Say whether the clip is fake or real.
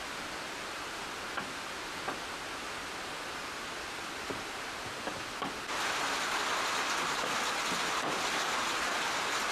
real